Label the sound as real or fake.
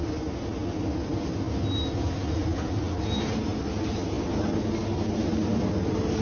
real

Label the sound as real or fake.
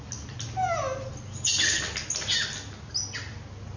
real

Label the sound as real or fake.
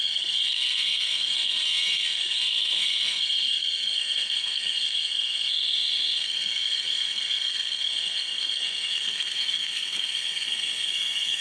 fake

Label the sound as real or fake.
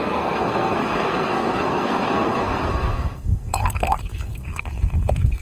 fake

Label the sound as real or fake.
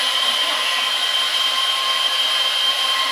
real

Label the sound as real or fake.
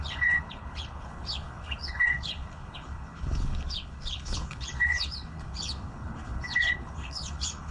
fake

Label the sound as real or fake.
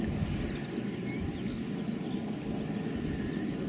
real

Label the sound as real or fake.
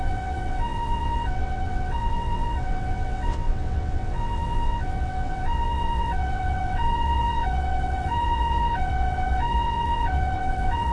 fake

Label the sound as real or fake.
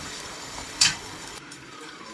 fake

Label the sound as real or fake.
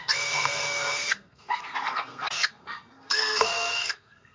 fake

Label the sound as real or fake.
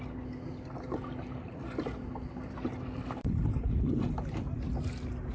real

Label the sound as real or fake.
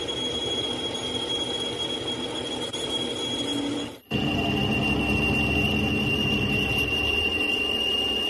real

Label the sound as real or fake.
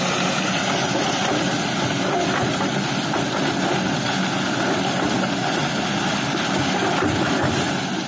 real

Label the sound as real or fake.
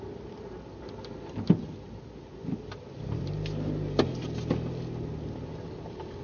real